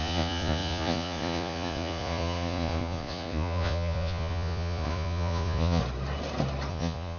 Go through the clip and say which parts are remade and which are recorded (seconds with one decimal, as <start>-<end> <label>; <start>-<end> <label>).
0.0-5.8 remade; 5.8-6.7 recorded; 6.7-7.2 remade